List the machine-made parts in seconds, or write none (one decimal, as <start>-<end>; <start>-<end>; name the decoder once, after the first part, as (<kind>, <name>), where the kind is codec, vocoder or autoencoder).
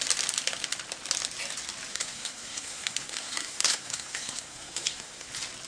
1.9-5.3 (codec, SNAC)